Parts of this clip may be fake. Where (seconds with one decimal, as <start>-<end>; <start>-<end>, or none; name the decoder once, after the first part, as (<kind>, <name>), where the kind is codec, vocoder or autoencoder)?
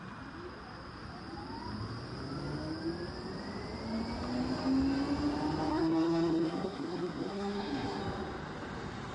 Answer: 5.7-8.0 (codec, SNAC)